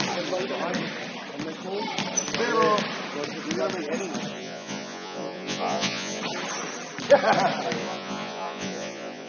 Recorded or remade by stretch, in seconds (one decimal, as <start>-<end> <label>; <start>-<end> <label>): 0.0-4.3 recorded; 4.3-6.2 remade; 6.2-7.8 recorded; 7.8-9.3 remade